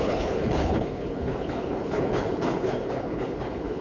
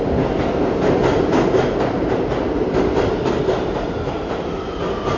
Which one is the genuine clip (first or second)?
second